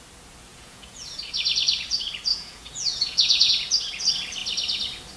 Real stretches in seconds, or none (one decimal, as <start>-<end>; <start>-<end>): 0.0-0.5; 1.2-2.3; 3.5-5.2